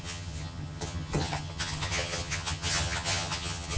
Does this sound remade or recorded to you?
remade